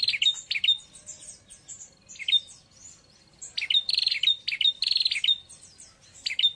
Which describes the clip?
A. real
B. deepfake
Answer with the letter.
A